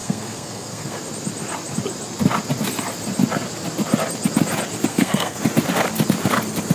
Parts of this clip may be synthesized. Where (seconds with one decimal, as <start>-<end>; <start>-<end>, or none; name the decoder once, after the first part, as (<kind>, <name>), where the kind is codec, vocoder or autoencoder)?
0.0-1.0 (codec, SNAC); 4.9-5.4